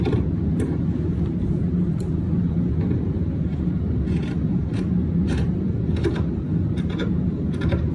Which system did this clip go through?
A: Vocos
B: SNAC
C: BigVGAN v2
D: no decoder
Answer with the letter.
C